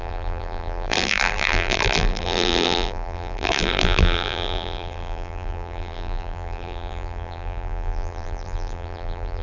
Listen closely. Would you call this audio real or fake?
fake